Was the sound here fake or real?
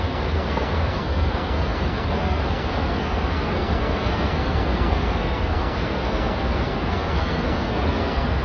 fake